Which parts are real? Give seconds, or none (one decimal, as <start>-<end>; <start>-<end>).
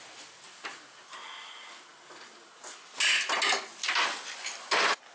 0.0-5.1